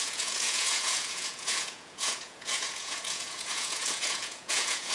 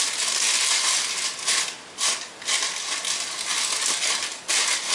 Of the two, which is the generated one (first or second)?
first